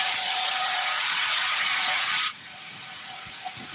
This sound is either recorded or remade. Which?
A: remade